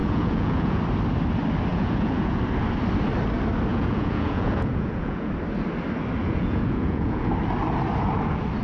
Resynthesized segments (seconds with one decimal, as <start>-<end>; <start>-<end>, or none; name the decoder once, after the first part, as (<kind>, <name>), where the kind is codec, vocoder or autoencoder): 0.0-0.8 (vocoder, Vocos); 1.7-2.4; 3.7-5.3; 6.2-7.3